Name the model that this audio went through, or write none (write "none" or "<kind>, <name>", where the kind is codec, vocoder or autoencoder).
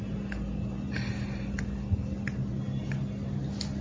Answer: none